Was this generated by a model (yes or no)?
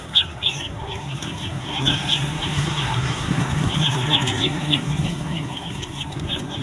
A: yes